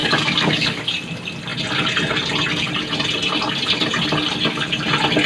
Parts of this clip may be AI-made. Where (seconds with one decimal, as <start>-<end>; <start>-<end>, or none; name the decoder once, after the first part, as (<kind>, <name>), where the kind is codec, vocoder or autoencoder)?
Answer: 0.0-0.8 (codec, DAC)